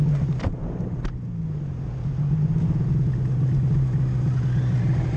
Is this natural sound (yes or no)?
yes